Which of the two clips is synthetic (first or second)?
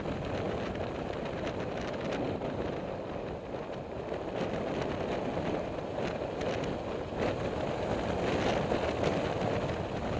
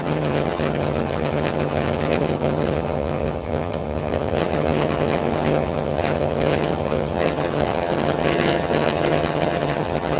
second